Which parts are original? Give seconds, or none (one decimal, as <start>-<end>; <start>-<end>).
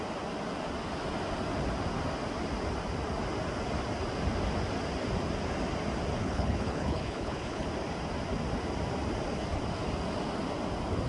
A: 0.0-6.2; 7.7-11.1